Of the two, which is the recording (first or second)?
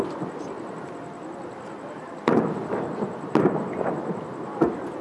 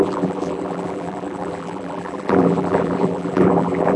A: first